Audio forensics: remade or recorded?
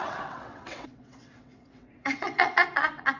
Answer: remade